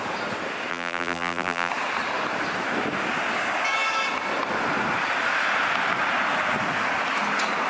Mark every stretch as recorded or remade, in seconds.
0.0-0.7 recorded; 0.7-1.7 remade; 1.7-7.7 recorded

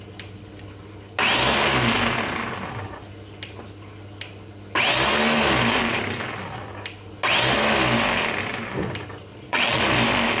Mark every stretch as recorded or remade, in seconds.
0.0-9.3 recorded; 9.3-9.8 remade; 9.8-10.4 recorded

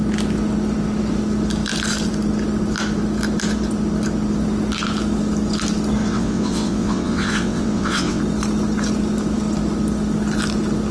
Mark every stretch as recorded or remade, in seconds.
0.0-6.0 recorded; 6.0-8.2 remade; 8.2-10.9 recorded

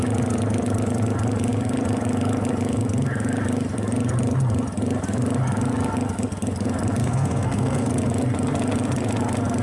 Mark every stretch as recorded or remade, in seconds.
0.0-7.0 recorded; 7.0-7.9 remade; 7.9-9.6 recorded

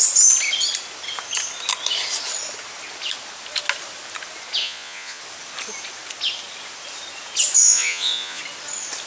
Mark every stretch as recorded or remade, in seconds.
0.0-4.6 recorded; 4.6-5.2 remade; 5.2-7.6 recorded; 7.6-8.4 remade; 8.4-9.1 recorded

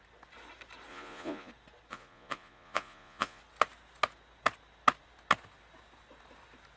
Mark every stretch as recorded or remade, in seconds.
0.0-0.9 recorded; 0.9-1.5 remade; 1.5-1.9 recorded; 1.9-3.4 remade; 3.4-6.8 recorded